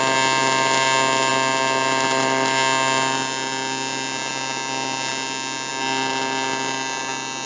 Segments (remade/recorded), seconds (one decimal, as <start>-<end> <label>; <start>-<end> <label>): 0.0-7.5 recorded